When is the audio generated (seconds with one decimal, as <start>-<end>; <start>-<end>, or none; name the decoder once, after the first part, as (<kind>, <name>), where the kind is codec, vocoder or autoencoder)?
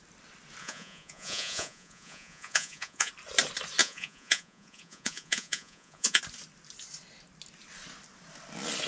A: 0.6-3.1 (vocoder, Vocos); 3.8-6.2